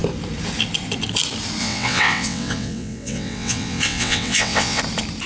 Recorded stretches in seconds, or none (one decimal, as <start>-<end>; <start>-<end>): 0.0-1.6; 4.8-5.3